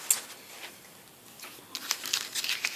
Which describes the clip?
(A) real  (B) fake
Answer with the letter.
A